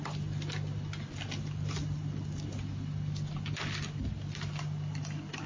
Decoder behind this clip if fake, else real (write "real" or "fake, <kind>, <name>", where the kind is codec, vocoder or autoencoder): real